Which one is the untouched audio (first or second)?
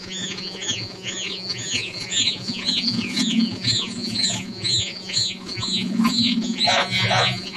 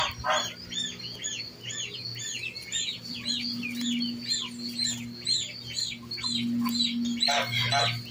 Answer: second